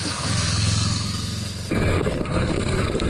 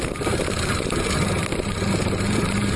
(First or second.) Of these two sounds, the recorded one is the second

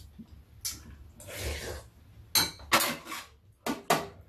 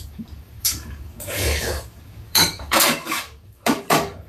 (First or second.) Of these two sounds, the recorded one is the first